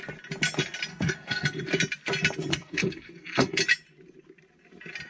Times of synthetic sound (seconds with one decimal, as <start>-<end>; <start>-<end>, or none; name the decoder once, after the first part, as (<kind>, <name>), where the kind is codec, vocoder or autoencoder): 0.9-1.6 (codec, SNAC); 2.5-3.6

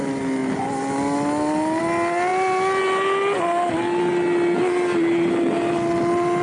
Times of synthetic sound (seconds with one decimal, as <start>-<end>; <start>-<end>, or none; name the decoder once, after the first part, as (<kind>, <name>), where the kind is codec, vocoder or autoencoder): none

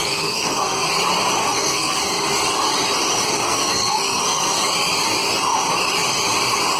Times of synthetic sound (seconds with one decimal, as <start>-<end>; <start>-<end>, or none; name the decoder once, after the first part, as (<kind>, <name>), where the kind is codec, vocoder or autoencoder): 0.0-0.9 (codec, SNAC); 1.4-2.0; 3.3-4.6